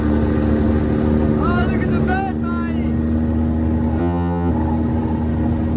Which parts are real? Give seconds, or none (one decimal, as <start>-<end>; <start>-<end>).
0.0-4.0; 4.5-5.8